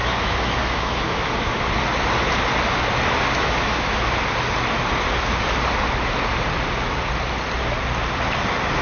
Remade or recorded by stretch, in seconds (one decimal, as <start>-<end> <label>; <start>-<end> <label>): 0.0-1.6 remade; 1.6-3.3 recorded; 3.3-4.0 remade; 4.0-8.8 recorded